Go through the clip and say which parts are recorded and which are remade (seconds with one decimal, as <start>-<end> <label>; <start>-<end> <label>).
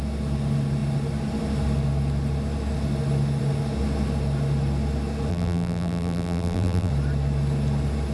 0.0-5.3 recorded; 5.3-6.9 remade; 6.9-8.1 recorded